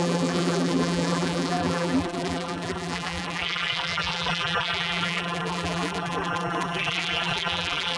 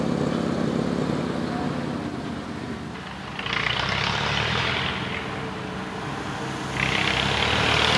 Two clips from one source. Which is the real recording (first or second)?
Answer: second